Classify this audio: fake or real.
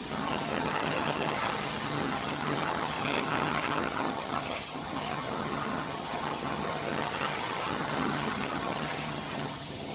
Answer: fake